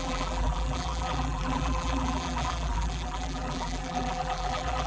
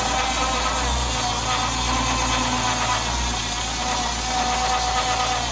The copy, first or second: first